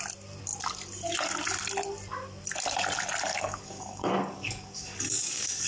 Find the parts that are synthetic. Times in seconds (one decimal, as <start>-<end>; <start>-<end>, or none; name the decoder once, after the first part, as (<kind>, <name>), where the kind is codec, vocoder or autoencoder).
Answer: 3.3-5.7 (codec, DAC)